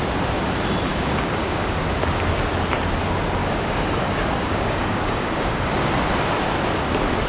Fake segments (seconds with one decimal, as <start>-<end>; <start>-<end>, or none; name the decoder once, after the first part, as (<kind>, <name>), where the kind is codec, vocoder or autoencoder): 0.9-1.8 (codec, DAC); 3.4-5.7